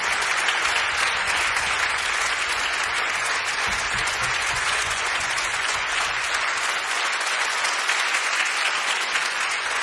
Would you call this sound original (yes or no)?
no